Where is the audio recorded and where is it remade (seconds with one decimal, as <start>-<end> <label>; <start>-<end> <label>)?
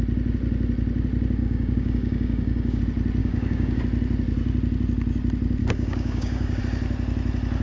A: 0.0-1.4 recorded; 1.4-2.8 remade; 2.8-3.2 recorded; 3.2-3.8 remade; 3.8-5.6 recorded; 5.6-6.6 remade; 6.6-7.6 recorded